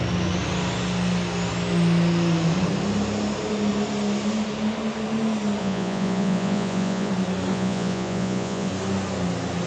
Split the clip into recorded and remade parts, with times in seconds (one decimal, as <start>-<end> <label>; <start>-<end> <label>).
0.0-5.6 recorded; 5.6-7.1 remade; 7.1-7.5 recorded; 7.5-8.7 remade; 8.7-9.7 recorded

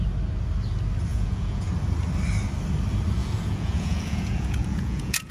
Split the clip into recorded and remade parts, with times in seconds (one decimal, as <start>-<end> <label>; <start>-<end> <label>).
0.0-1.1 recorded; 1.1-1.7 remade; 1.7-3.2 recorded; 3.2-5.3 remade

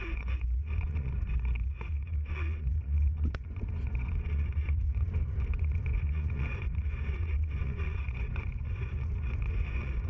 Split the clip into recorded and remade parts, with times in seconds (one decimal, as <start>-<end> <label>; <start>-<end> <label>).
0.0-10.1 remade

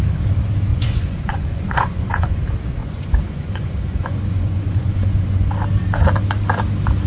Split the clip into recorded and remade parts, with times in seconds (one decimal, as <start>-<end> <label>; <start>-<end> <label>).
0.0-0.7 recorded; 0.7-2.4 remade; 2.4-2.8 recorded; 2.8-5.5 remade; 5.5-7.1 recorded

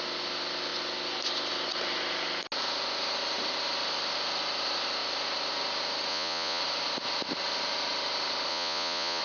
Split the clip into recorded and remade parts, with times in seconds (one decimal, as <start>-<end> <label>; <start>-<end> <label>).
0.0-6.1 recorded; 6.1-6.6 remade; 6.6-8.5 recorded; 8.5-9.2 remade

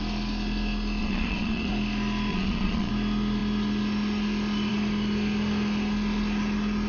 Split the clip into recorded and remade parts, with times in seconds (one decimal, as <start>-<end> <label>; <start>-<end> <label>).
0.0-1.0 recorded; 1.0-1.7 remade; 1.7-2.3 recorded; 2.3-2.9 remade; 2.9-6.9 recorded